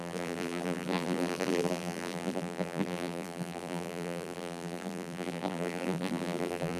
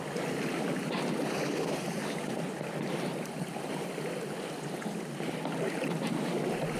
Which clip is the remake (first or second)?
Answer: first